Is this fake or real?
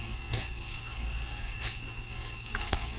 fake